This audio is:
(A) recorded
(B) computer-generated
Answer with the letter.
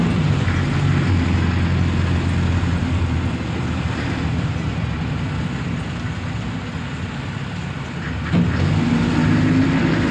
A